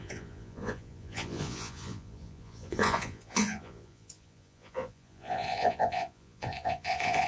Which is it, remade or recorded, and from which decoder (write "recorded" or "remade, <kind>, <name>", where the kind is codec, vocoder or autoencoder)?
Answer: remade, vocoder, Vocos